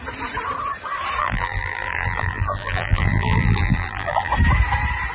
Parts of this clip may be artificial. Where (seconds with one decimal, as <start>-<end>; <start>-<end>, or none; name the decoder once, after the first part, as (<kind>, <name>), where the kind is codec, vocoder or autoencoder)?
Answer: 1.2-4.3 (vocoder, BigVGAN v2)